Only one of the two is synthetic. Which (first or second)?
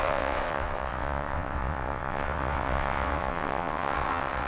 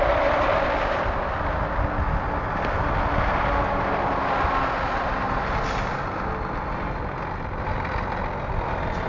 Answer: first